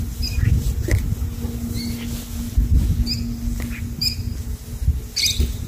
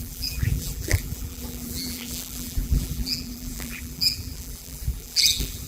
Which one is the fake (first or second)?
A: second